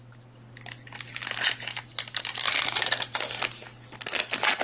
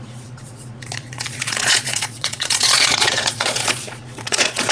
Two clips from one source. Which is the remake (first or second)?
second